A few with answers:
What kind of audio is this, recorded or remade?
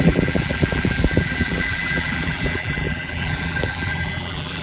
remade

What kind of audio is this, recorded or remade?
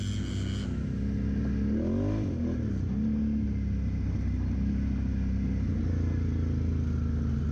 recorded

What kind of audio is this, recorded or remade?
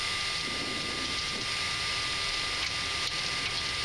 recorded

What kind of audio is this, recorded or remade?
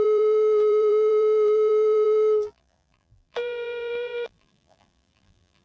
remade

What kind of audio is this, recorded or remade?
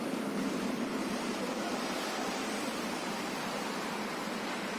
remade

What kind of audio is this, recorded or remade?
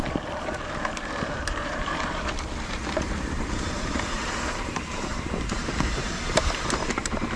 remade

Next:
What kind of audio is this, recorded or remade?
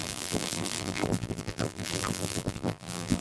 remade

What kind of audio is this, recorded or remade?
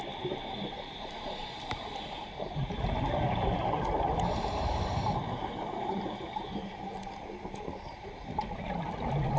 remade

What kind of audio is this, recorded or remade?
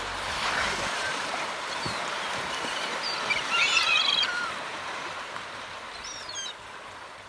remade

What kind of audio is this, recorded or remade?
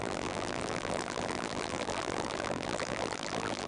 remade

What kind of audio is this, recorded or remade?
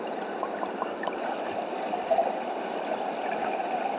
recorded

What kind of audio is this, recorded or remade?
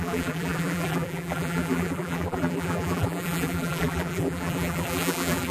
remade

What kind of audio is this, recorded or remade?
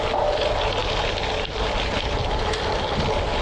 recorded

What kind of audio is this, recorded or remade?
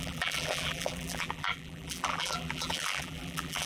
remade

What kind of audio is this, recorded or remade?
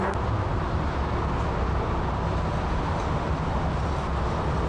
recorded